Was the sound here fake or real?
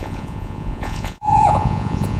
fake